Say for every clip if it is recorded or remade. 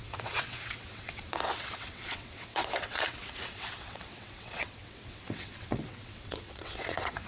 remade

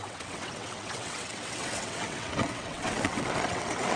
remade